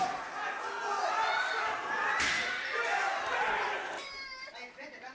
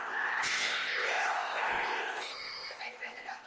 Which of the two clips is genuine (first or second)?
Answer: first